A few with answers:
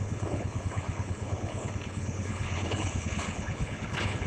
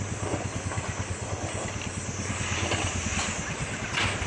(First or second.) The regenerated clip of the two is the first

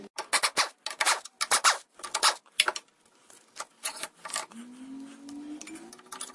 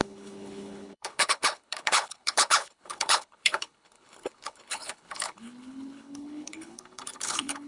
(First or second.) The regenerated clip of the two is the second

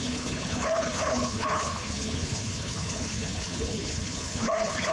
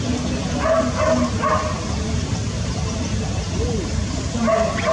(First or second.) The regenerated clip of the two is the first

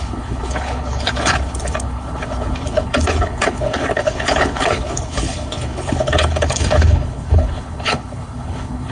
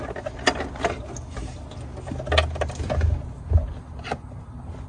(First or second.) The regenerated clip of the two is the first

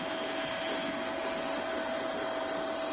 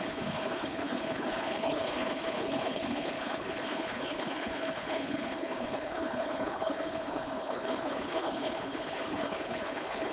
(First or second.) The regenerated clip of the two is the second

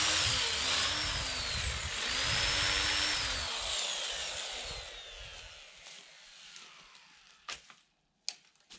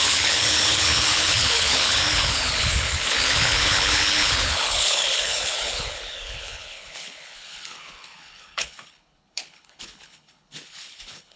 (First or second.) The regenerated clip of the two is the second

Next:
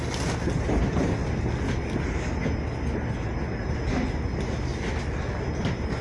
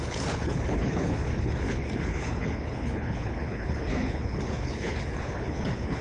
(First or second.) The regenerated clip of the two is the second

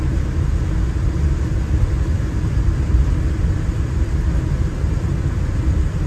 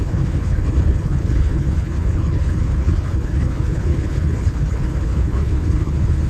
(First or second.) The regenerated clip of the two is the second